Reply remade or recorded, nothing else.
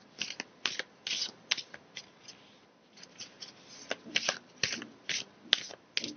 recorded